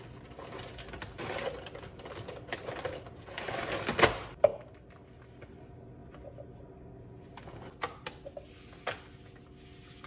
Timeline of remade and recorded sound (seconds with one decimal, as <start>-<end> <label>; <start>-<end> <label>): 0.0-10.1 recorded